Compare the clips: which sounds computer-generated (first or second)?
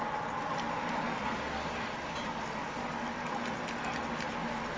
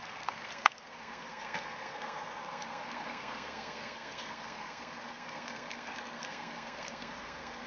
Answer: second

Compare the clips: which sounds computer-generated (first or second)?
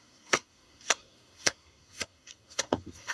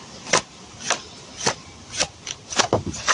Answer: first